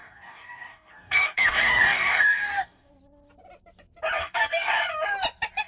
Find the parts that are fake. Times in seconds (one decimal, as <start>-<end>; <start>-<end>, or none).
0.0-2.9; 4.2-4.8